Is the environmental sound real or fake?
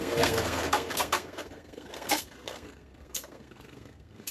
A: fake